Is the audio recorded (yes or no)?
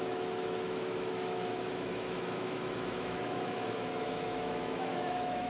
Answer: no